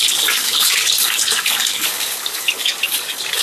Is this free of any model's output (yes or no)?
no